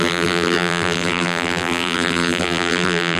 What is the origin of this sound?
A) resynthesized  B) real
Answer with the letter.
A